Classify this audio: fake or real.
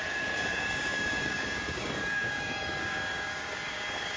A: fake